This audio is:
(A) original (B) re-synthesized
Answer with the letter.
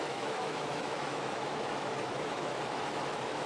B